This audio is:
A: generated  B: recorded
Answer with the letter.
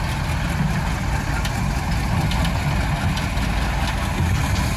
B